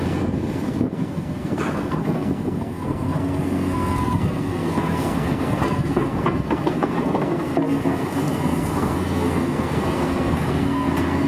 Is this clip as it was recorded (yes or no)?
no